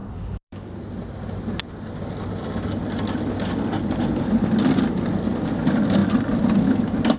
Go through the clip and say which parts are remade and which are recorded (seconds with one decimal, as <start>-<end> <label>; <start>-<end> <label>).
0.0-0.7 remade; 0.7-7.2 recorded